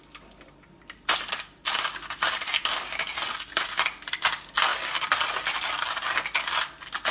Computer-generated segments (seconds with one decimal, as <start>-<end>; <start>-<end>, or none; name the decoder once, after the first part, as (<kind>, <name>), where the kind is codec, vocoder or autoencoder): none